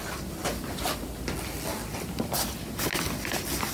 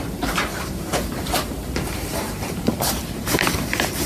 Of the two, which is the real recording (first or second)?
first